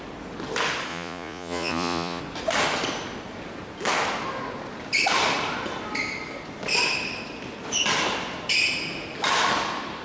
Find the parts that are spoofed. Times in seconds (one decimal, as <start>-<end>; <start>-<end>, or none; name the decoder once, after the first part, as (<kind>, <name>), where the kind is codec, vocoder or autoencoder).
0.9-2.2 (vocoder, Vocos)